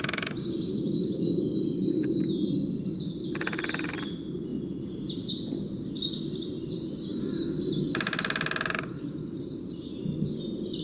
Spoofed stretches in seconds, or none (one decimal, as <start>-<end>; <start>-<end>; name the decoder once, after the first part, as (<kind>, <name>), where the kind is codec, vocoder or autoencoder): none